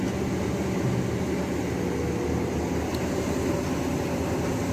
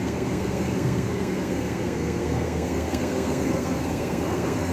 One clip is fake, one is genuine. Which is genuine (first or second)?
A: first